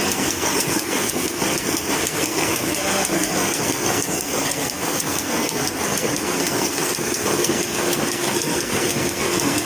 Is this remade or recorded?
remade